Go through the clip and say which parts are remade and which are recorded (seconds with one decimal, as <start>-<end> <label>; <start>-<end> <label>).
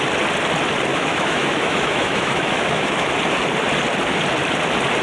0.0-0.9 recorded; 0.9-3.1 remade; 3.1-5.0 recorded